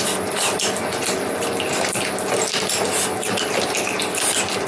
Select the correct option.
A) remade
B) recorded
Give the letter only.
B